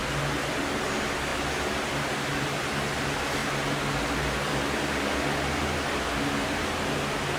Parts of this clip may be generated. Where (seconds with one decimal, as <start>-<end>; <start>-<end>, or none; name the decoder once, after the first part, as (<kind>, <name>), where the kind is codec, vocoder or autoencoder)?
none